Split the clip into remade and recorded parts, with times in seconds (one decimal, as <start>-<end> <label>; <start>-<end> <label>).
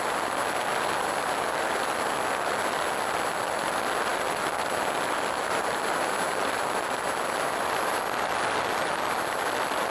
0.0-9.9 recorded